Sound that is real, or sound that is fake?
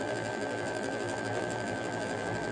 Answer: fake